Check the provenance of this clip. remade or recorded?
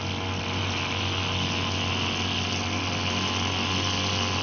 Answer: recorded